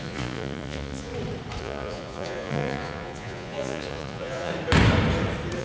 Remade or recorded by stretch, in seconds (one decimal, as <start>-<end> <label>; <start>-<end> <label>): 0.0-1.1 remade; 1.1-1.6 recorded; 1.6-4.5 remade; 4.5-5.6 recorded